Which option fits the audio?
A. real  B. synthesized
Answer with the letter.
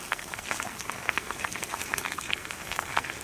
B